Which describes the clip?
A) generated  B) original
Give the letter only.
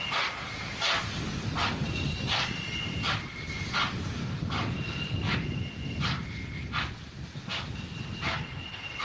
B